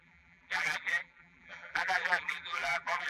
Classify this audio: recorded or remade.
remade